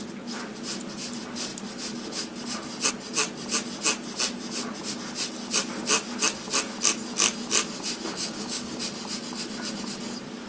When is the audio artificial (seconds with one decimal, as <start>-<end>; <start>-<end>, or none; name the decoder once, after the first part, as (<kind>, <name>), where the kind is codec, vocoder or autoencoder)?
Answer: 8.1-8.8 (codec, DAC)

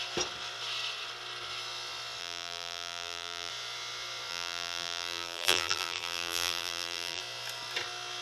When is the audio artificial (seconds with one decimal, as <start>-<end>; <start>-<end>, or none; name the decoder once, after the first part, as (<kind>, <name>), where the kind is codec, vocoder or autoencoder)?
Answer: 2.2-3.5 (vocoder, BigVGAN v2); 4.3-7.2

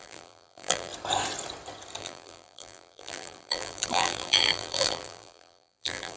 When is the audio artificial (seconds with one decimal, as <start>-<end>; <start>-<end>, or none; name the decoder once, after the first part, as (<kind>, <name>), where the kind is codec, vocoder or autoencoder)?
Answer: 0.0-0.9 (vocoder, BigVGAN v2); 2.0-6.2

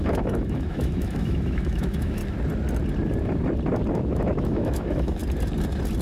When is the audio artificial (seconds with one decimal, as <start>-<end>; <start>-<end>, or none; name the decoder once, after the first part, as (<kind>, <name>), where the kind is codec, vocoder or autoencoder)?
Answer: 0.0-2.2 (autoencoder, DAC-VAE); 3.9-5.2

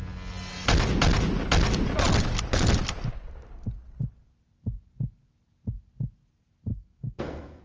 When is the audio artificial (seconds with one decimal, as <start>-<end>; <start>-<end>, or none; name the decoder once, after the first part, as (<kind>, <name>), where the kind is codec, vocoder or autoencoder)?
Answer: 6.7-7.6 (codec, SNAC)

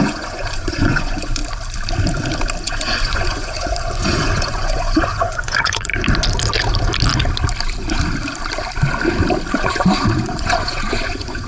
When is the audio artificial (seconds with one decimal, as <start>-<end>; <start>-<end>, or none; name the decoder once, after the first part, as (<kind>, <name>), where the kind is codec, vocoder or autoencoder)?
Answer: 0.0-1.4 (vocoder, Vocos); 2.6-5.9; 9.5-11.5

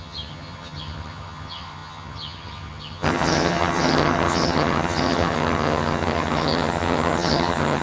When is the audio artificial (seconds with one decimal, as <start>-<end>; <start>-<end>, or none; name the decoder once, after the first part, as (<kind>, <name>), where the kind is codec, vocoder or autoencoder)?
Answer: 0.0-7.8 (vocoder, HiFi-GAN)